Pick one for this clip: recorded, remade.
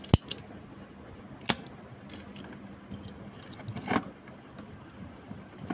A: recorded